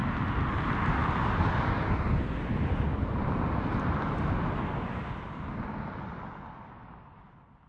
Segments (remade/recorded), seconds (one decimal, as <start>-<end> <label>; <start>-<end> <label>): 0.0-7.7 recorded